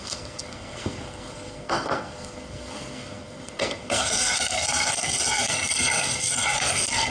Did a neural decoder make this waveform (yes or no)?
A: yes